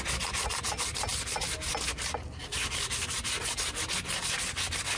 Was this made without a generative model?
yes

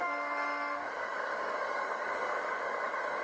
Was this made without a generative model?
no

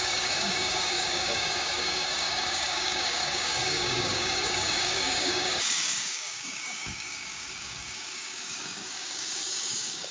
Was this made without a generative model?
no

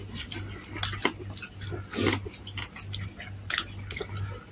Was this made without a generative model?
yes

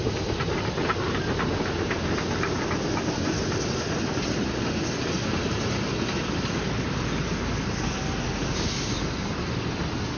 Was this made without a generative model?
yes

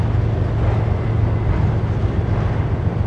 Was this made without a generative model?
yes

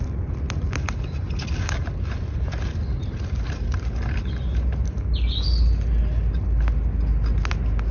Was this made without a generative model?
yes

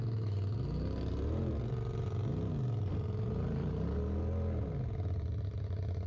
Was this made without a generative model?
yes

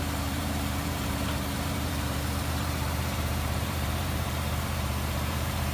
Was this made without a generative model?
no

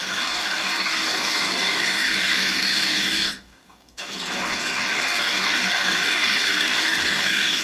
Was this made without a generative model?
no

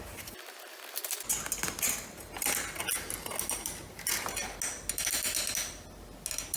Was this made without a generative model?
yes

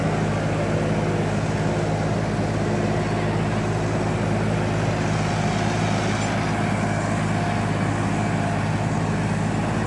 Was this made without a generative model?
yes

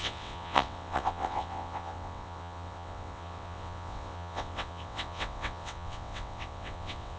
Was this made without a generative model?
no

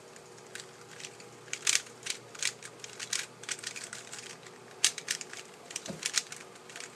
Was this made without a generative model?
no